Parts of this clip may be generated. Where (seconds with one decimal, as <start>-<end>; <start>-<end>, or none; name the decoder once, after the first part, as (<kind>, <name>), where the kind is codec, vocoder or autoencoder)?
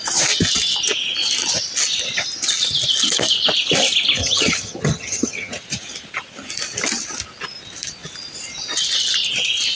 4.2-5.6 (vocoder, HiFi-GAN)